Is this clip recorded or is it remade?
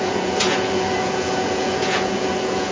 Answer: remade